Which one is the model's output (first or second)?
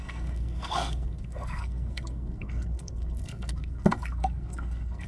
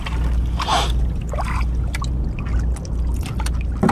first